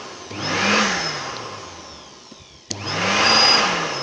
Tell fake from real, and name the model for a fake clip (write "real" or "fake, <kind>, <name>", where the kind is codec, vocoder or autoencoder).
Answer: real